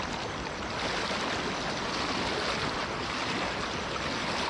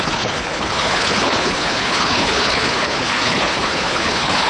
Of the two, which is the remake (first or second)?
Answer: second